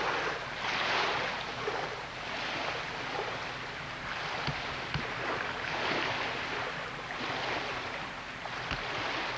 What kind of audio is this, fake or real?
real